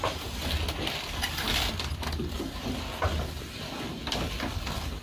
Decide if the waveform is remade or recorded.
recorded